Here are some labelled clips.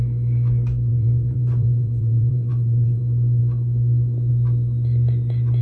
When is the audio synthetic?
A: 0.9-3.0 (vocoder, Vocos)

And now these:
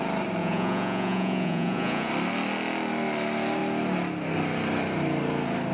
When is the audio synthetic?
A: 0.4-2.1 (vocoder, Vocos)

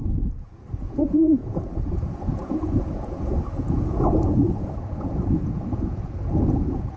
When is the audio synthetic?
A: 0.7-7.0 (vocoder, Vocos)

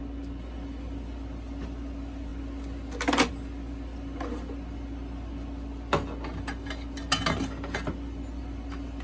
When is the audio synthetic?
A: none

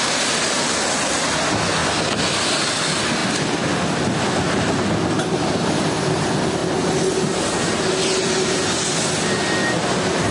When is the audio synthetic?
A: none

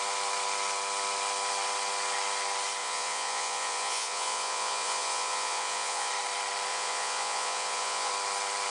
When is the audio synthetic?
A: 2.8-6.1 (vocoder, Vocos); 6.7-8.1